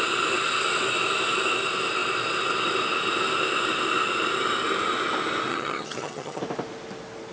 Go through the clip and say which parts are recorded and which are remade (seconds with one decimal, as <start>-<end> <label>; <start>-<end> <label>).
0.0-5.5 recorded; 5.5-6.4 remade; 6.4-7.3 recorded